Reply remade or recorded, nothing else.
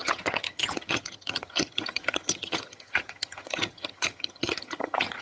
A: remade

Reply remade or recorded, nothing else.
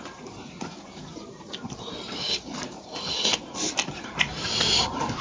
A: remade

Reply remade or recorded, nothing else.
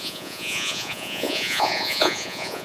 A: remade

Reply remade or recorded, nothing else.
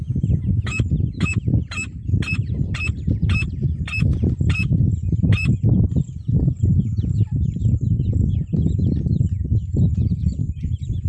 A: remade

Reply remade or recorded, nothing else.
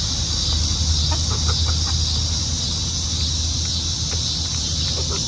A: recorded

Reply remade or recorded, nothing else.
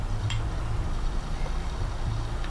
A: remade